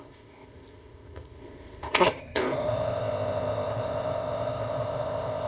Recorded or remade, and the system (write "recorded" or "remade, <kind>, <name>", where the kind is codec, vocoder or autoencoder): remade, codec, ZipCodec